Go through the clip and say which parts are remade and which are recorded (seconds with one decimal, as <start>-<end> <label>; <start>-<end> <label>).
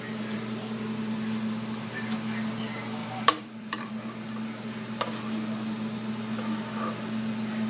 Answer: 0.0-3.0 recorded; 3.0-3.9 remade; 3.9-7.7 recorded